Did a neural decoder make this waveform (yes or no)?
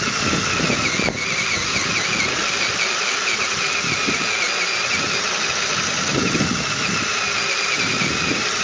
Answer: no